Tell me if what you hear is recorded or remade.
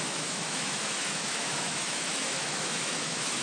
remade